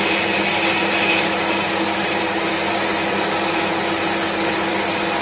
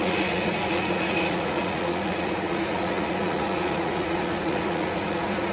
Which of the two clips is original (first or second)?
first